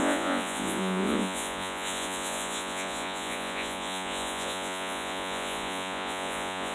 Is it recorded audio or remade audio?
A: remade